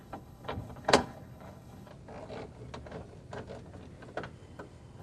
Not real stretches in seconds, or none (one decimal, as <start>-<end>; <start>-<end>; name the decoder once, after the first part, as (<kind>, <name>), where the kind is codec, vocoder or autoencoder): 0.0-1.9 (codec, HILCodec)